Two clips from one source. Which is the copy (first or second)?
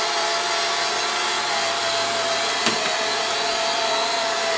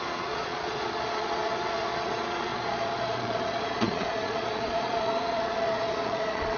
second